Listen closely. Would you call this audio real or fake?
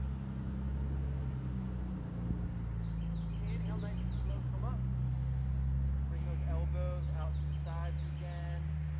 real